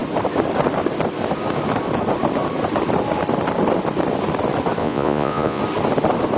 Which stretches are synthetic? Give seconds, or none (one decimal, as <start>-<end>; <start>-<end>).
4.8-5.6